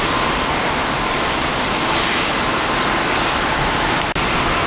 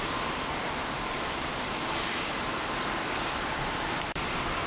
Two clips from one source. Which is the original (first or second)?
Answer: first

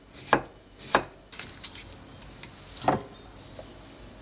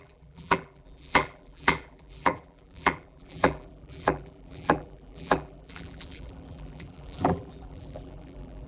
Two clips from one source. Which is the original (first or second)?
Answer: first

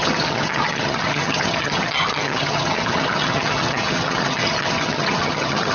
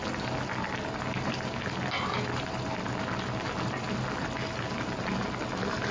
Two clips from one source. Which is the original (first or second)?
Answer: second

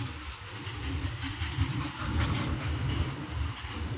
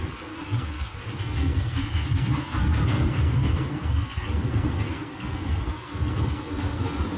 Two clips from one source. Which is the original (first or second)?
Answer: first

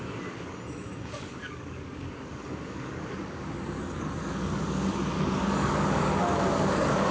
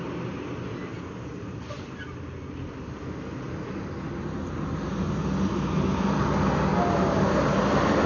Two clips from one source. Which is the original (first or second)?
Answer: second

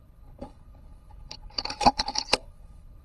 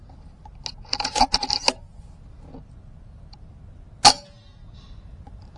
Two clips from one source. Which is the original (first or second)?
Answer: second